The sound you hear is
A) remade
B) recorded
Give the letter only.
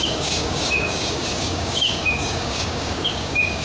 A